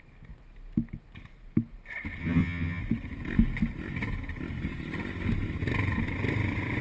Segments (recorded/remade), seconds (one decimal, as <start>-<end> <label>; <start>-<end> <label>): 0.0-2.2 recorded; 2.2-2.8 remade; 2.8-6.8 recorded